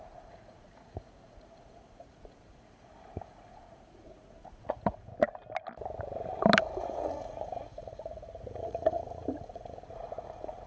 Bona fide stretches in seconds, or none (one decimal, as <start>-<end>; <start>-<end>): 5.1-6.8